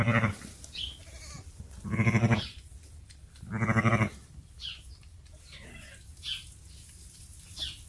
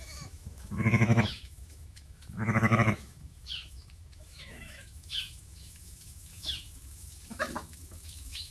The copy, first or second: second